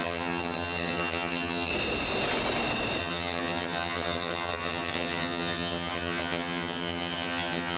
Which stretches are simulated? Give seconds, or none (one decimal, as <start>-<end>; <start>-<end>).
0.0-1.7; 3.0-7.8